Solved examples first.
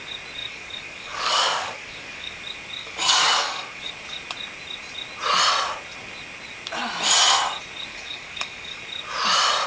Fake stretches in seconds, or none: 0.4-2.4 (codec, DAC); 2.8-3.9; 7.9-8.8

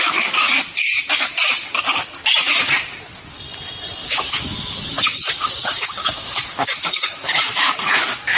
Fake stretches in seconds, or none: 4.0-8.4 (codec, DAC)